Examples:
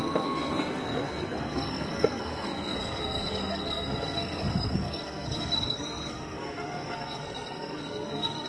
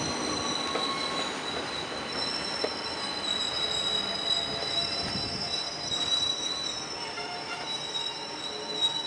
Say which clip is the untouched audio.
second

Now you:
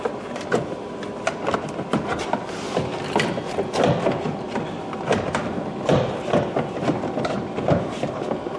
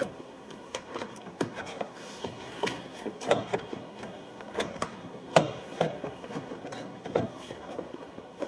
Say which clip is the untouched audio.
first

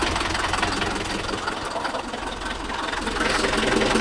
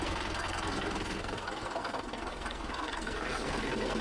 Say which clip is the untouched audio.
first